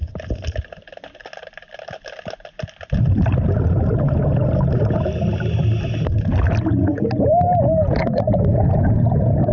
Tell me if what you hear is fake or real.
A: real